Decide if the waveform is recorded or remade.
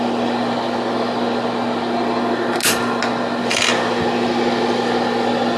recorded